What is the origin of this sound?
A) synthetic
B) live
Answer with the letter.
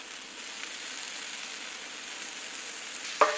B